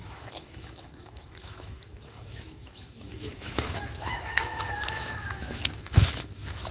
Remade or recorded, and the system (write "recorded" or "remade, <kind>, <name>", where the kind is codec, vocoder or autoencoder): remade, autoencoder, DAC-VAE